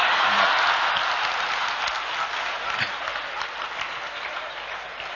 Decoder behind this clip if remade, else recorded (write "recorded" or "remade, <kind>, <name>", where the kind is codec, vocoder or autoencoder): recorded